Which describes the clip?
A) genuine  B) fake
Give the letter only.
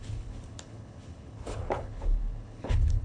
B